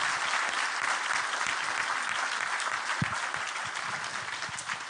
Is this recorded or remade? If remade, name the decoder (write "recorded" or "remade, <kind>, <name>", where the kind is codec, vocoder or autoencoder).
recorded